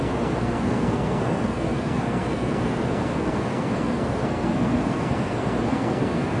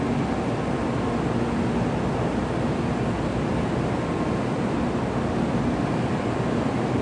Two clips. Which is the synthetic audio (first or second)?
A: first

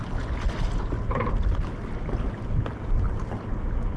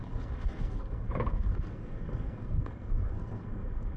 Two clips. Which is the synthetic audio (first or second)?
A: second